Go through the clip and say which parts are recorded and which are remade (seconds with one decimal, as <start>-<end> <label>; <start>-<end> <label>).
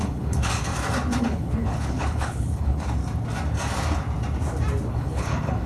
0.0-0.7 remade; 0.7-1.2 recorded; 1.2-3.0 remade; 3.0-4.9 recorded; 4.9-5.7 remade